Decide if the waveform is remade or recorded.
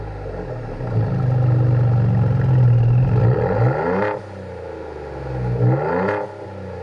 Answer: recorded